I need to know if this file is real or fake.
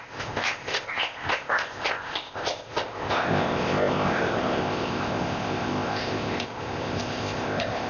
fake